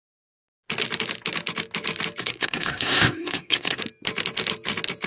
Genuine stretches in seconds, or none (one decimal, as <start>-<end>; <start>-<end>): 0.0-2.2; 3.8-5.1